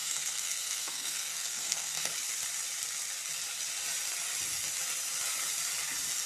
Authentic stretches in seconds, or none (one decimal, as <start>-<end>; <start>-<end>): 2.1-6.3